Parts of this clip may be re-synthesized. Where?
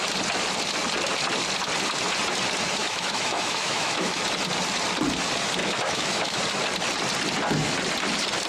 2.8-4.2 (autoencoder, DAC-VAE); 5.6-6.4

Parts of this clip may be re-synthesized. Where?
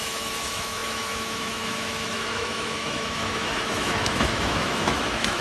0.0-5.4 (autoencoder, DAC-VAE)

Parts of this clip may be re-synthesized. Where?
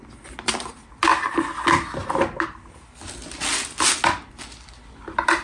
none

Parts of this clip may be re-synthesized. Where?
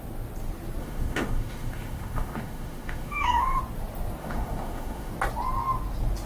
0.8-3.6 (autoencoder, DAC-VAE); 4.2-5.1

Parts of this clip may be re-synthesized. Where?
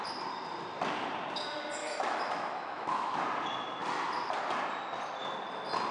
1.8-3.2 (autoencoder, DAC-VAE)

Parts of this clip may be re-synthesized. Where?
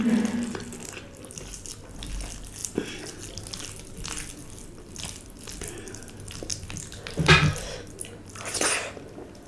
none